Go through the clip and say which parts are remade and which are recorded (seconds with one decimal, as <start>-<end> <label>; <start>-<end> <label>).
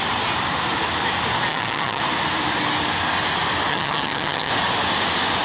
0.0-1.5 recorded; 1.5-2.0 remade; 2.0-3.7 recorded; 3.7-4.5 remade; 4.5-5.4 recorded